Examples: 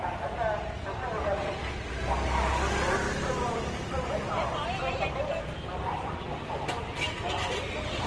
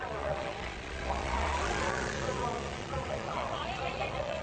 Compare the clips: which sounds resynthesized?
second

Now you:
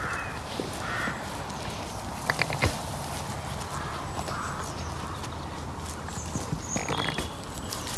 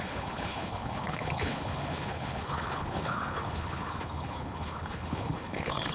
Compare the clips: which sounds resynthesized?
second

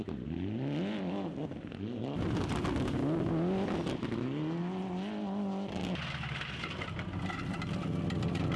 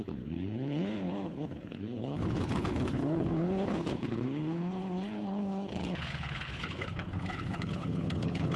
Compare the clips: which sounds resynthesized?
second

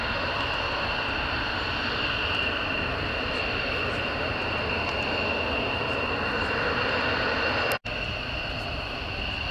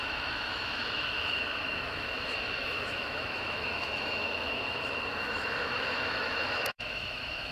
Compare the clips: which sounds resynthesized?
second